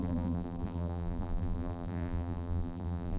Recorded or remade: remade